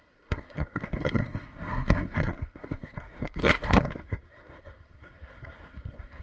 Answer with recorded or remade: remade